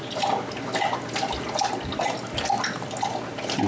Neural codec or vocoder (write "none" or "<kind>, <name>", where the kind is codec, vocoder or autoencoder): none